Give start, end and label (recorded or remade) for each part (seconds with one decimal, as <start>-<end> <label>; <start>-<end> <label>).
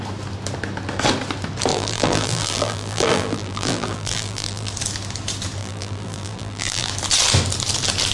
0.0-1.7 recorded; 1.7-4.7 remade; 4.7-5.6 recorded; 5.6-6.9 remade; 6.9-8.1 recorded